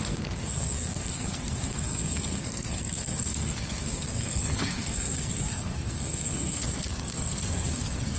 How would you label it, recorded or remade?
remade